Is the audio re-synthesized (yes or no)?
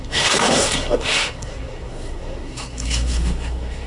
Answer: yes